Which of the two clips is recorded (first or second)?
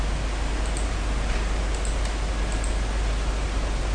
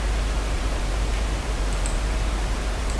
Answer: first